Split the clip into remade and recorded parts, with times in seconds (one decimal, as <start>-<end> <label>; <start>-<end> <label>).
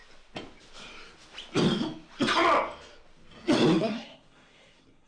0.0-3.8 recorded; 3.8-5.1 remade